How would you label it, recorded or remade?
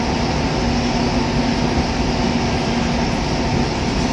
recorded